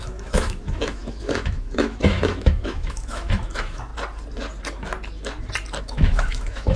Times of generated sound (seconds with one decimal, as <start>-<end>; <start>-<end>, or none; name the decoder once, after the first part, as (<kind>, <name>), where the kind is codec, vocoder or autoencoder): 0.0-3.9 (autoencoder, DAC-VAE); 5.8-6.8